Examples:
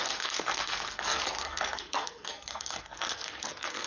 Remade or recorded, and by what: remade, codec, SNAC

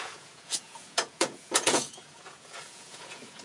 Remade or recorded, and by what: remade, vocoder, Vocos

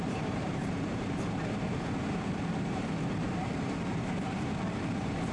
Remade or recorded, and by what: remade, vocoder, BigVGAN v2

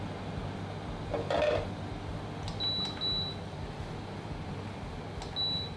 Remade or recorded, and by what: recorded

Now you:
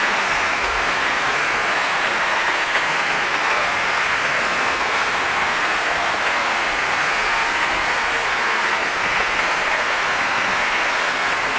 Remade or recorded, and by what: remade, codec, SNAC